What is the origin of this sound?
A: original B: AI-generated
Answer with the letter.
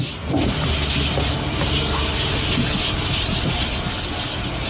A